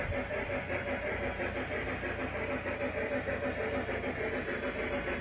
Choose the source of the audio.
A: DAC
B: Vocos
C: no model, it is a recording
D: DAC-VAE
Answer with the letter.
C